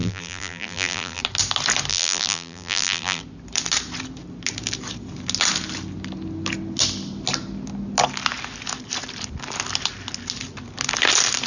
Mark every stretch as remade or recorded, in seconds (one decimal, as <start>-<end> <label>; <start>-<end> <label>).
0.0-1.2 remade; 1.2-1.9 recorded; 1.9-3.2 remade; 3.2-11.5 recorded

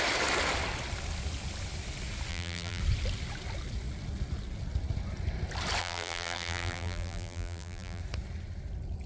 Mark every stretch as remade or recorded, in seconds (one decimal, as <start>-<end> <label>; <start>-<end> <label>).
0.0-2.3 recorded; 2.3-2.8 remade; 2.8-5.8 recorded; 5.8-8.0 remade; 8.0-9.1 recorded

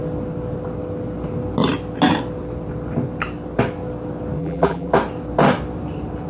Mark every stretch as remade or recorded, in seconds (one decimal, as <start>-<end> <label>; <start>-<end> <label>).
0.0-4.4 recorded; 4.4-4.9 remade; 4.9-6.3 recorded

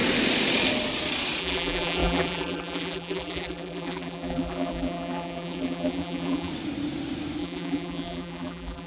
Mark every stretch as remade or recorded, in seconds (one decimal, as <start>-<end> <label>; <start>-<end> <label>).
0.0-1.4 recorded; 1.4-6.5 remade; 6.5-7.4 recorded; 7.4-8.9 remade

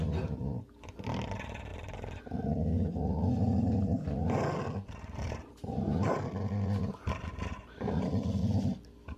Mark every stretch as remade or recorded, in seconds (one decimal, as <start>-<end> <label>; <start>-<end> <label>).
0.0-9.2 recorded

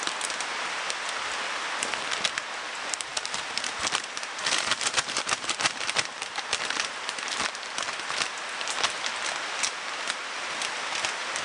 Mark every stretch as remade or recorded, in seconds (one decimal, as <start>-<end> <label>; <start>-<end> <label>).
0.0-3.1 recorded; 3.1-7.4 remade; 7.4-11.4 recorded